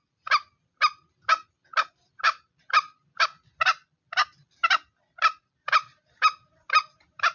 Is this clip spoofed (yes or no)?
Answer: no